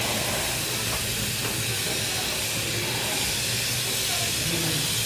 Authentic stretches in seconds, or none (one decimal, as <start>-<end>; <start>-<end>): 0.0-5.1